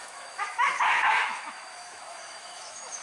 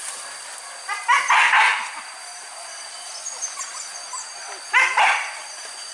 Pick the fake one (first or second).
first